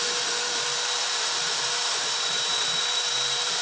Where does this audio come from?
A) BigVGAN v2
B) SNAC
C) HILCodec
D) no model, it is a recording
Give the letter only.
A